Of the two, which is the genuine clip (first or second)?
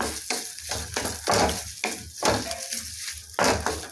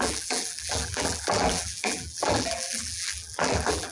first